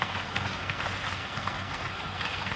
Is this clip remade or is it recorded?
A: remade